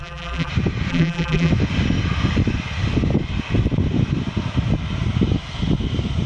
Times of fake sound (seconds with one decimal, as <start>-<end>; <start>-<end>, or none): 0.0-0.5; 0.9-1.5